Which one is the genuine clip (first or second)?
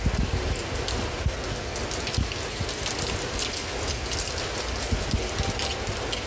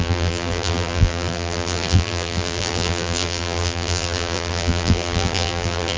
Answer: first